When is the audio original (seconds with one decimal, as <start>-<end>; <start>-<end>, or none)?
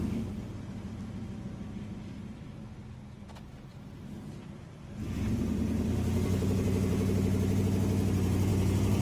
0.0-3.7; 7.6-8.5